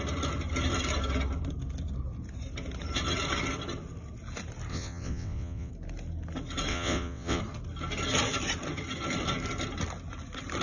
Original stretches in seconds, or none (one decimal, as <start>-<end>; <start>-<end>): 0.0-4.7; 5.7-6.7; 7.4-10.6